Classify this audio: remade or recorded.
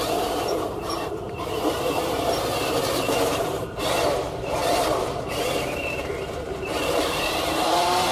remade